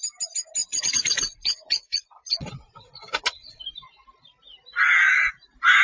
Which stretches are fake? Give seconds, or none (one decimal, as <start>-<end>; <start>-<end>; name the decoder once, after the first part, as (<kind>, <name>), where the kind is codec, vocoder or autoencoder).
0.6-3.6 (vocoder, Vocos)